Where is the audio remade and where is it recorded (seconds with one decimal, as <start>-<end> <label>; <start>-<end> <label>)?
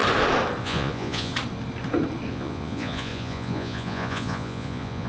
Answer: 0.0-0.6 recorded; 0.6-1.3 remade; 1.3-2.3 recorded; 2.3-5.1 remade